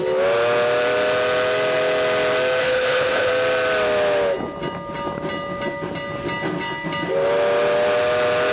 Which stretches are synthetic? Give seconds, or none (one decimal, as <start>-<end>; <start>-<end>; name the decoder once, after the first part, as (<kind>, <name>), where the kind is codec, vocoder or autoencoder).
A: 2.6-3.3 (codec, HILCodec)